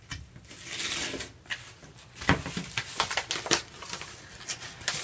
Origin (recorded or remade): recorded